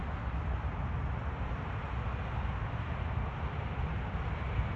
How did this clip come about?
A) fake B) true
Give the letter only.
B